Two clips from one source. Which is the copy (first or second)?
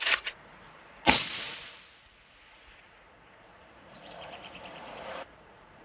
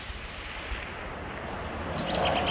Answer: first